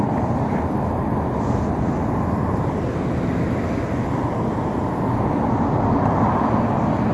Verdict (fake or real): real